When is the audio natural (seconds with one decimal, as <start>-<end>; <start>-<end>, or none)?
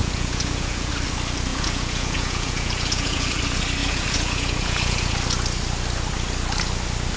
0.9-1.5; 3.4-3.8; 5.1-7.2